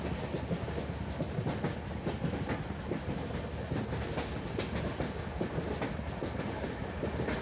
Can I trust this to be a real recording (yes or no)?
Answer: yes